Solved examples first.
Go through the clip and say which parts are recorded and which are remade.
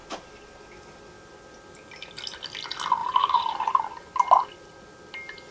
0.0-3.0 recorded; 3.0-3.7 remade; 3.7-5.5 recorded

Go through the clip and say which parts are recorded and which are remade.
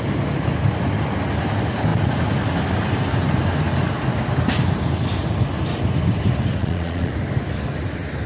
0.0-6.6 recorded; 6.6-7.1 remade; 7.1-8.3 recorded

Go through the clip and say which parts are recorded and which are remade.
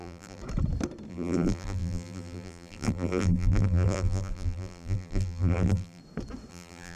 0.0-0.4 remade; 0.4-1.1 recorded; 1.1-6.0 remade; 6.0-6.5 recorded; 6.5-7.0 remade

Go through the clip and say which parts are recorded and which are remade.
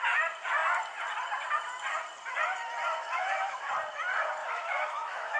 0.0-3.0 recorded; 3.0-3.6 remade; 3.6-4.4 recorded; 4.4-5.4 remade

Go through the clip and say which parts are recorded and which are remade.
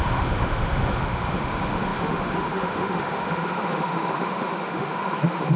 0.0-5.6 remade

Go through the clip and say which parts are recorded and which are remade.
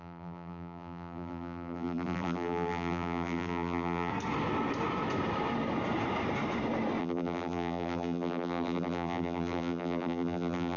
0.0-4.1 remade; 4.1-7.0 recorded; 7.0-10.8 remade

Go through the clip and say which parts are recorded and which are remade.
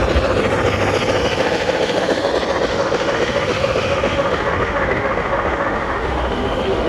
0.0-1.2 recorded; 1.2-2.3 remade; 2.3-2.7 recorded; 2.7-6.9 remade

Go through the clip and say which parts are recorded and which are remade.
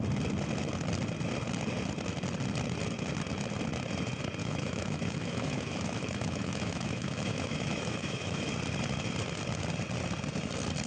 0.0-4.4 recorded; 4.4-8.5 remade; 8.5-10.9 recorded